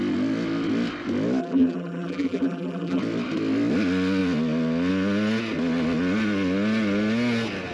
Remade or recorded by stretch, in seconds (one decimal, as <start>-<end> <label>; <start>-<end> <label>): 0.0-1.4 recorded; 1.4-3.0 remade; 3.0-7.7 recorded